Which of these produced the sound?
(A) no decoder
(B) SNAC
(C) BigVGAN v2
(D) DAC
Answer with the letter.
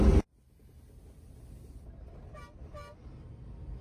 A